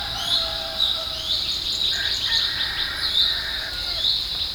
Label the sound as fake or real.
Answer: fake